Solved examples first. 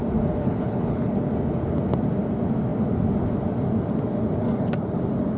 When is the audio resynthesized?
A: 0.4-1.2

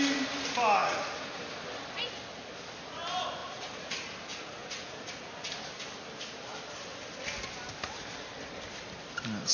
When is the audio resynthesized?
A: 0.8-1.5; 3.4-3.9; 4.3-5.5

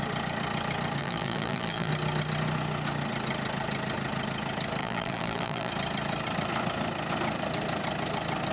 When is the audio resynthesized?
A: 1.0-1.9; 4.8-5.7